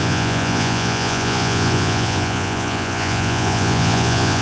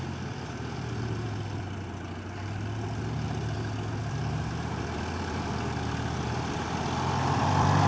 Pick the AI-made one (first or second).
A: first